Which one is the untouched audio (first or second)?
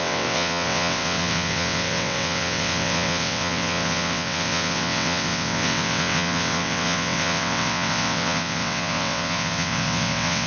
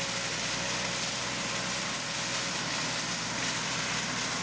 second